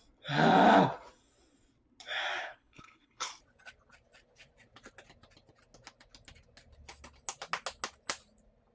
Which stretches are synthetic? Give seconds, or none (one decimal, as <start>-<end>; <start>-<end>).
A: 2.4-3.3

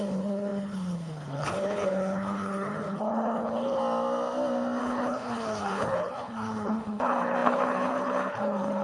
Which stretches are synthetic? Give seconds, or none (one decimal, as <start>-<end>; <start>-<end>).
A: 0.0-3.8; 4.8-8.8

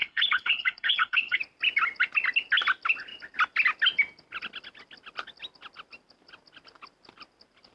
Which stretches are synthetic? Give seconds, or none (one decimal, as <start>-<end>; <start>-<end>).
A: 0.0-1.4

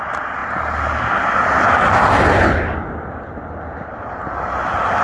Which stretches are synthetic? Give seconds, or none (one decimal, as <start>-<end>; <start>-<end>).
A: none